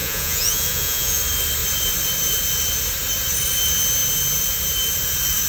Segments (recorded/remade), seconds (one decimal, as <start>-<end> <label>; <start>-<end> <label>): 0.0-1.2 remade; 1.2-5.5 recorded